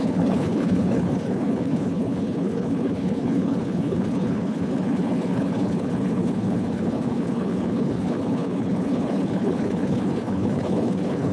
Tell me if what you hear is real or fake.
fake